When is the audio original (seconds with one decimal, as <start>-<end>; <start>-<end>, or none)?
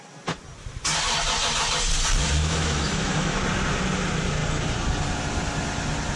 0.0-2.4; 3.4-6.2